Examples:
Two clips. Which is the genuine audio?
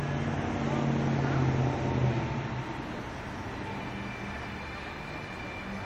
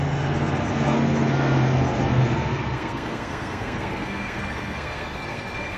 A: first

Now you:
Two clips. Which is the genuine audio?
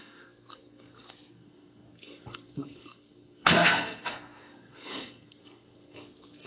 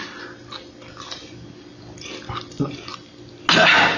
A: second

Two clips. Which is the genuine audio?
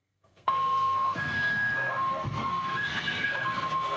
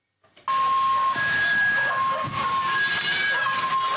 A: second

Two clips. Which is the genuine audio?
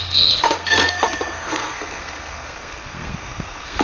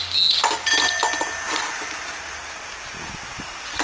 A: second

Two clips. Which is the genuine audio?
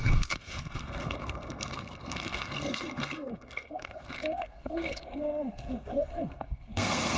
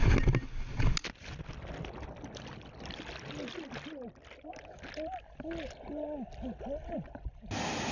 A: second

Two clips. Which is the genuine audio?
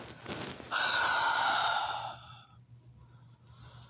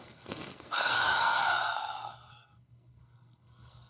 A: first